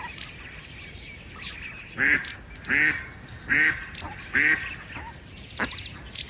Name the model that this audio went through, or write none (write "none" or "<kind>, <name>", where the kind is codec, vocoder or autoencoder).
none